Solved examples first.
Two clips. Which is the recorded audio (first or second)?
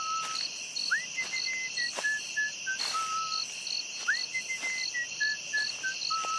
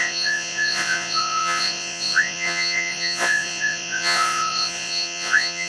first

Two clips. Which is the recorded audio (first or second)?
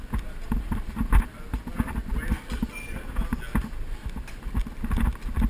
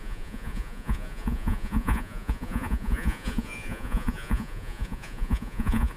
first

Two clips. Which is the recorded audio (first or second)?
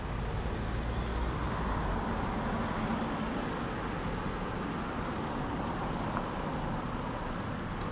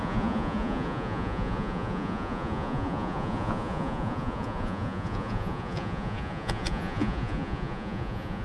first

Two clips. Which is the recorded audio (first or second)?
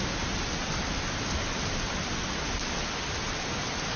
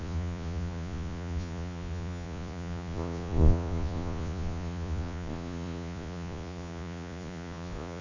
first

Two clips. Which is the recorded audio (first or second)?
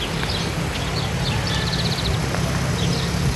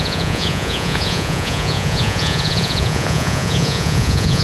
first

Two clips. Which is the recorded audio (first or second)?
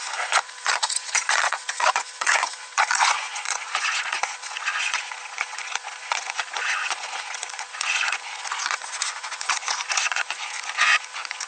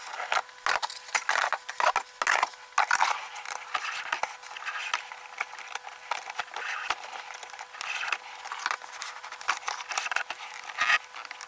second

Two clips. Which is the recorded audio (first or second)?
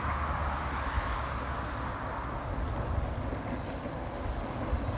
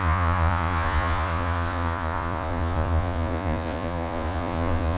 first